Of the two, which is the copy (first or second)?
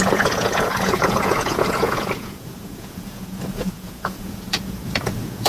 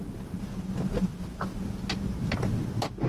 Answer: first